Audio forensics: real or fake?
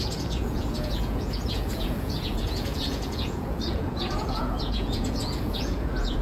fake